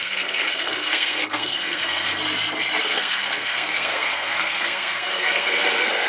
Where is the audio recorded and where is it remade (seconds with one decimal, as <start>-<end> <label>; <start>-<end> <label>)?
0.0-2.1 remade; 2.1-2.8 recorded; 2.8-6.1 remade

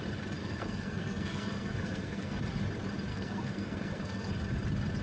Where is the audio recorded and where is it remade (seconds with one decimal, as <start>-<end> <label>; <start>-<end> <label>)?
0.0-0.4 recorded; 0.4-2.4 remade; 2.4-3.1 recorded; 3.1-4.3 remade; 4.3-5.0 recorded